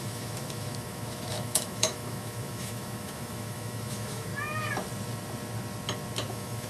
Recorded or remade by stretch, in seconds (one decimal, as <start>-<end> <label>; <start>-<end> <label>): 0.0-4.3 remade; 4.3-6.3 recorded; 6.3-6.7 remade